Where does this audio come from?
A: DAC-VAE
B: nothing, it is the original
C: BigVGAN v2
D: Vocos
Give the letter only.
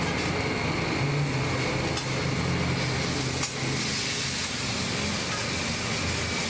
B